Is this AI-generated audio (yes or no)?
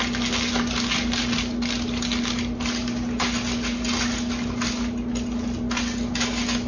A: no